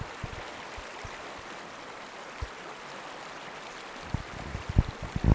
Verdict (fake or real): real